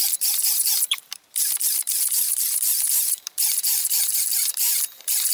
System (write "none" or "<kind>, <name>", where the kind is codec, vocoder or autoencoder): vocoder, BigVGAN v2